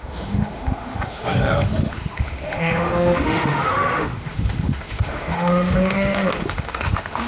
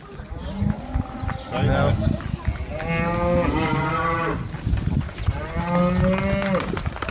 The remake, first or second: first